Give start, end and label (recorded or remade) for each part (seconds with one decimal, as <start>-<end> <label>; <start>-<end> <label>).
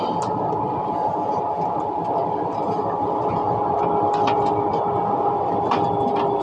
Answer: 0.0-6.4 recorded